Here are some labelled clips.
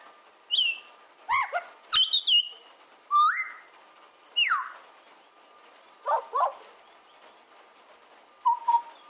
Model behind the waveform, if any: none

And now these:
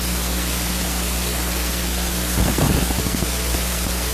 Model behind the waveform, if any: codec, SNAC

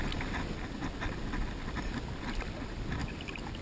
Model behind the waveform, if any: none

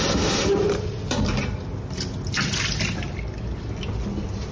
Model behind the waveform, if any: none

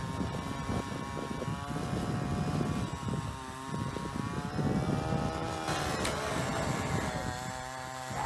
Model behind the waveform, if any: none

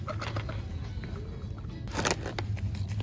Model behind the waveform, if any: none